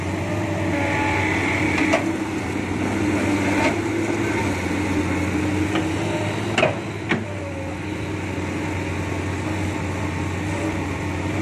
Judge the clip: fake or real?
real